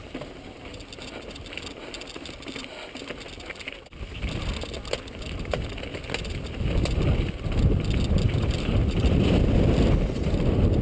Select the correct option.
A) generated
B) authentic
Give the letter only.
B